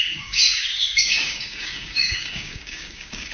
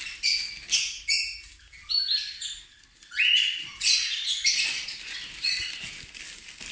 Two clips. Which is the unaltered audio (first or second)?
second